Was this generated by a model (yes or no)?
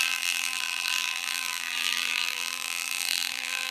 yes